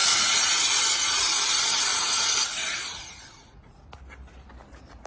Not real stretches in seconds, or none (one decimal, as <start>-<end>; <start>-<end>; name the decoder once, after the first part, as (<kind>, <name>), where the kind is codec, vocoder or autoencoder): 0.0-1.2 (vocoder, Vocos); 1.9-3.9